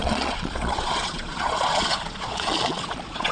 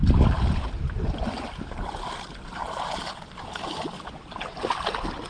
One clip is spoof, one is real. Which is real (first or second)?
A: second